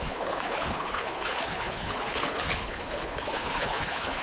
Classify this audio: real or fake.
fake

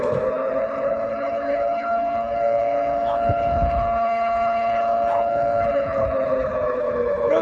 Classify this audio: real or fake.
fake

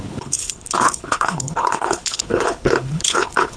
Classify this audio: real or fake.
fake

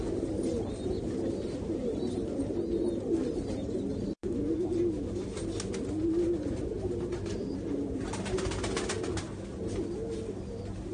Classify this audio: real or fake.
real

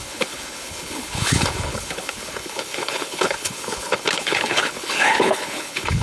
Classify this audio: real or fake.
fake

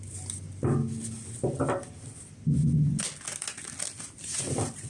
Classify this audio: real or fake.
real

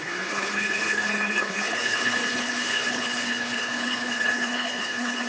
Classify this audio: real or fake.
fake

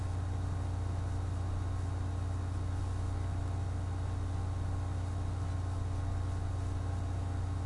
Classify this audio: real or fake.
real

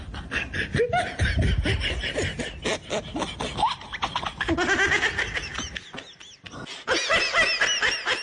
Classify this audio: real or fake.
real